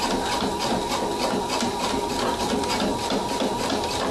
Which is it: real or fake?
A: real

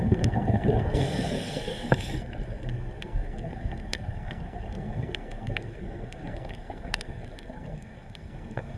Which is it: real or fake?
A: fake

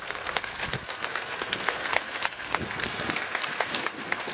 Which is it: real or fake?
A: fake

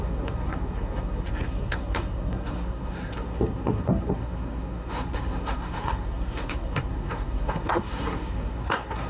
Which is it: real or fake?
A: fake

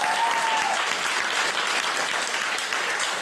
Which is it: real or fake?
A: real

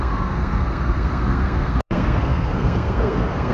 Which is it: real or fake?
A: fake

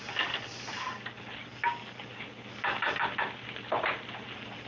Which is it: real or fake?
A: real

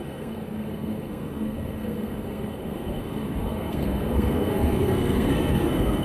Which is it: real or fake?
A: fake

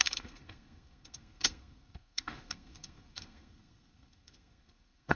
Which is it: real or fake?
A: fake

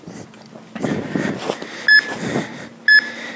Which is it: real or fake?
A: real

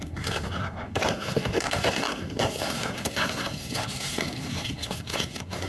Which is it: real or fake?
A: fake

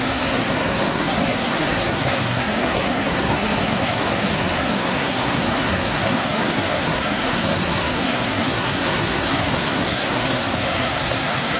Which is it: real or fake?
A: fake